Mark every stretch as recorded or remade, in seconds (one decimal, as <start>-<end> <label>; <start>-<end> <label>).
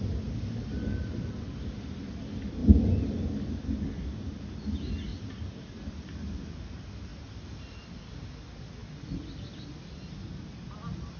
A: 0.0-2.6 recorded; 2.6-3.2 remade; 3.2-5.1 recorded; 5.1-6.6 remade; 6.6-7.1 recorded; 7.1-8.0 remade; 8.0-11.2 recorded